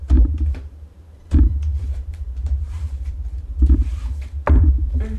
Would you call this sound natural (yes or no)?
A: no